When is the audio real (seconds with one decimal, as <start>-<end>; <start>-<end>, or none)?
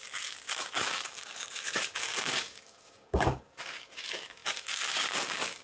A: none